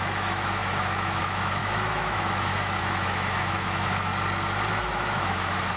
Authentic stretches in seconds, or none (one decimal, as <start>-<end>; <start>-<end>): 4.1-4.8